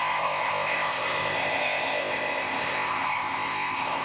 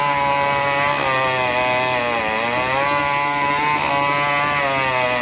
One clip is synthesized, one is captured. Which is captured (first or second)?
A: second